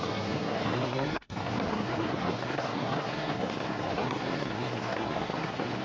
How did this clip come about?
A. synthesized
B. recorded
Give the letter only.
A